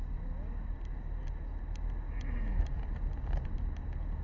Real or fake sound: real